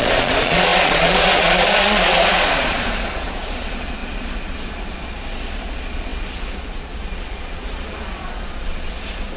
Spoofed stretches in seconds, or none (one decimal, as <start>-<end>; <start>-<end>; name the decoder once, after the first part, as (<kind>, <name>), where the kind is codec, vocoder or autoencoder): 0.0-9.4 (vocoder, Vocos)